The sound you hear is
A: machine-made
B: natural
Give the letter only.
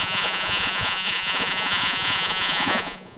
A